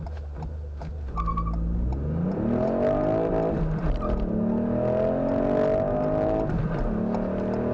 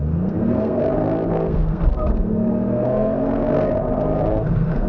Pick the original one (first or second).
first